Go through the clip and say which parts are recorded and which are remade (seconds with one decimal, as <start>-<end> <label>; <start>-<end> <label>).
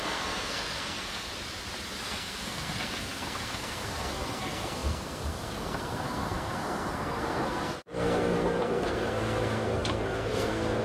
0.0-1.3 remade; 1.3-2.0 recorded; 2.0-10.8 remade